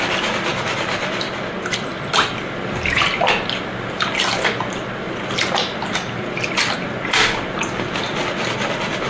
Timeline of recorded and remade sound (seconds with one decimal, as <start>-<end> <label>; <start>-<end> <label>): 0.0-9.1 recorded